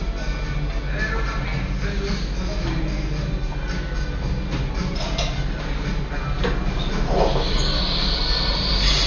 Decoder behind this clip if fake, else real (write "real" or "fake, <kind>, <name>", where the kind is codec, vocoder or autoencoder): real